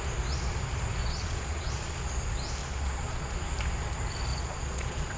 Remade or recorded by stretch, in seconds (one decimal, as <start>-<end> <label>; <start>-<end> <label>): 0.0-1.0 recorded; 1.0-1.7 remade; 1.7-2.6 recorded; 2.6-3.3 remade; 3.3-4.3 recorded; 4.3-5.2 remade